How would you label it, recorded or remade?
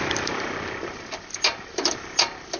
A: recorded